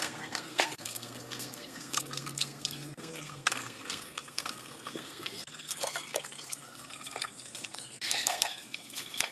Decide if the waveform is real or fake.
fake